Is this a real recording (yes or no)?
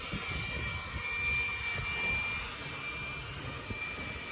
yes